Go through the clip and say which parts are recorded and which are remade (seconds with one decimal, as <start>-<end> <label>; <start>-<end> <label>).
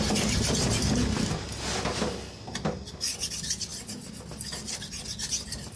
0.0-5.8 recorded